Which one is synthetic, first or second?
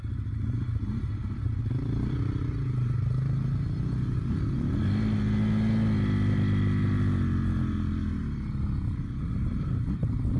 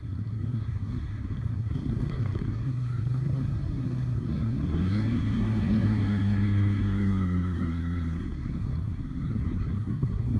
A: second